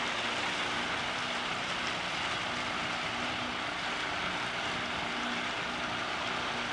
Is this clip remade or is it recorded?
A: recorded